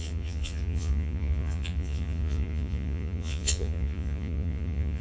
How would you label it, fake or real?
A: fake